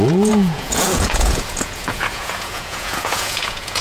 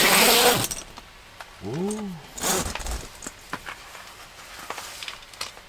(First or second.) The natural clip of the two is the second